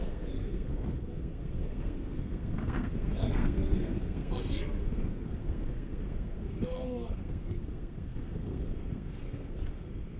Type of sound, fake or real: fake